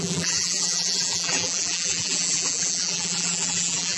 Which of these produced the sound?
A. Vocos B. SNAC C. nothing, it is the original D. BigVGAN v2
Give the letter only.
D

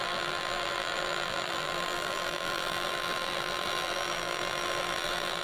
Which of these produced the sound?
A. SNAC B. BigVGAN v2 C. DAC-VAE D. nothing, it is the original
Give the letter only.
B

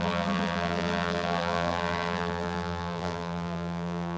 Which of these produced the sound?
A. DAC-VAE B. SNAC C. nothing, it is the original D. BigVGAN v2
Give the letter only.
D